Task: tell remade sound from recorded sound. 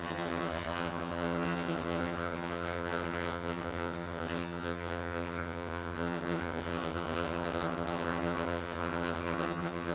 remade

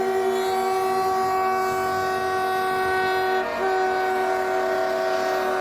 recorded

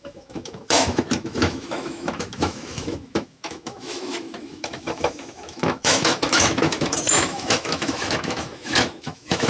remade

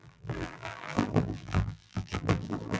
remade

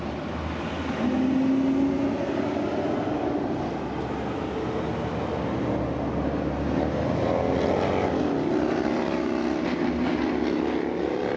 recorded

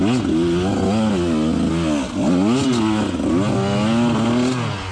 recorded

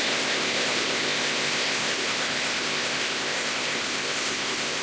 remade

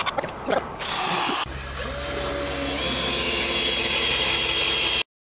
recorded